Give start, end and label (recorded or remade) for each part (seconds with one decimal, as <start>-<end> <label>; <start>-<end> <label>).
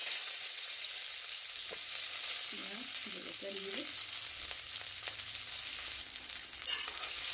0.0-0.9 remade; 0.9-7.3 recorded